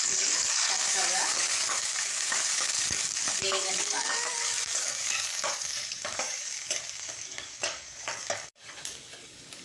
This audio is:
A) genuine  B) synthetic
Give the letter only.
B